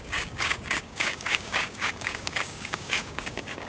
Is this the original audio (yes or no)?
no